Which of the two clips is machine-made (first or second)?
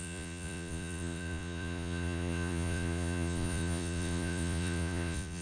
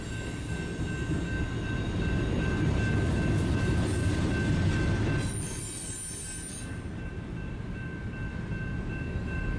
first